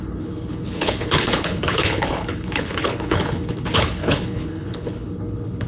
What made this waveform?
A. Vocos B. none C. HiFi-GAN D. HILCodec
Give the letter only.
D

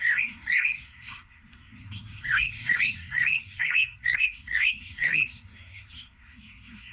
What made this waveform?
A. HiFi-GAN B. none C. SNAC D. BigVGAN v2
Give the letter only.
C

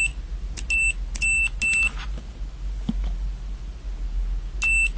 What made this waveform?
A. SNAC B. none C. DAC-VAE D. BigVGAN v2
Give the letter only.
B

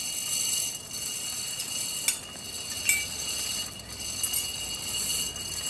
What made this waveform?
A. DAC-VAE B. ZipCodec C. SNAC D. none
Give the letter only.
D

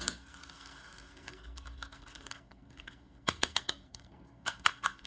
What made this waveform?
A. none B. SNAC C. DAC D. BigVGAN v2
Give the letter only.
B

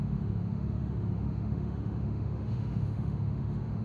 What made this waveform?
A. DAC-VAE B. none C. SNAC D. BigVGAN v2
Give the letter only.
A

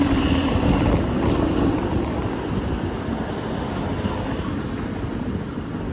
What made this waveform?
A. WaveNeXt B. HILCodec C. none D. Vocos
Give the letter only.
C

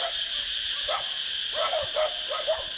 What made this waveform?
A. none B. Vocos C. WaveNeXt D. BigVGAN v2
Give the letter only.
A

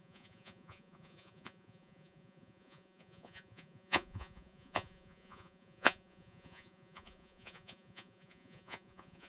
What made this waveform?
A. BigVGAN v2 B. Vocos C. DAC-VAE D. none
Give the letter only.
B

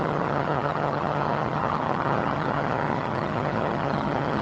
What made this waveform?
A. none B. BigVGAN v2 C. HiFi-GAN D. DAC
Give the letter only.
C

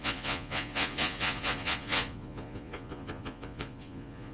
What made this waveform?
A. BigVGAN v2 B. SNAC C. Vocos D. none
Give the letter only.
C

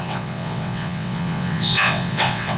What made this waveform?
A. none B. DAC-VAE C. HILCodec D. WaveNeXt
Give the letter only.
D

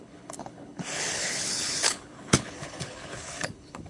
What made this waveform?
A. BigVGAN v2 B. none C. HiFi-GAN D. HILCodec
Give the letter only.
D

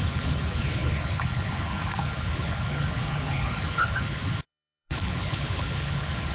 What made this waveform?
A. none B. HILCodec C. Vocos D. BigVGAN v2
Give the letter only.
B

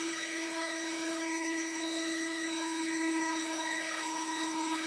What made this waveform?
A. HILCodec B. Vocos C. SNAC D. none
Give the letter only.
A